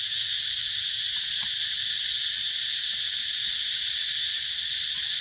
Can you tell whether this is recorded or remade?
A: remade